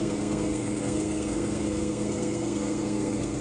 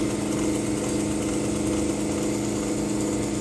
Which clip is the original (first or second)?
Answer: second